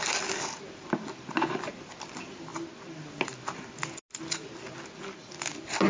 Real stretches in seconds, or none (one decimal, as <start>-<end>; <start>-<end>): 0.0-5.9